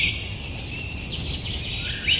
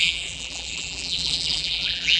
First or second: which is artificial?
second